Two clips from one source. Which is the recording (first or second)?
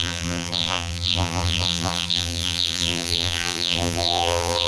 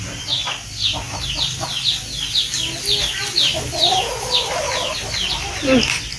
second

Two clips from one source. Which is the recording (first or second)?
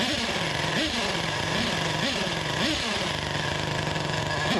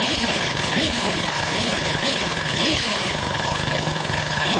first